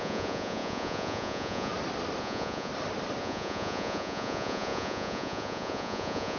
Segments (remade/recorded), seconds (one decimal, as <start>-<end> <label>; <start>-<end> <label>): 0.0-1.7 remade; 1.7-2.2 recorded; 2.2-2.7 remade; 2.7-3.2 recorded; 3.2-6.4 remade